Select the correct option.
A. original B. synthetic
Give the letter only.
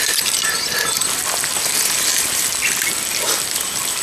A